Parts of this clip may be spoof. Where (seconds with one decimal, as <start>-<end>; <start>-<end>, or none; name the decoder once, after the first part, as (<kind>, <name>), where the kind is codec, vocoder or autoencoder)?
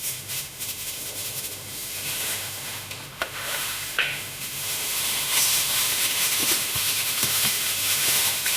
0.0-8.6 (autoencoder, DAC-VAE)